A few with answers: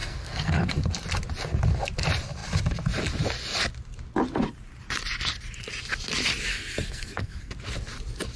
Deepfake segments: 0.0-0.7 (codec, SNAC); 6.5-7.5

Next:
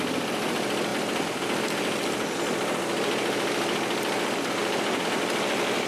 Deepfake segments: none

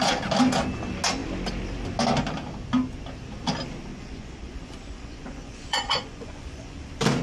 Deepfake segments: 3.9-6.8 (vocoder, Vocos)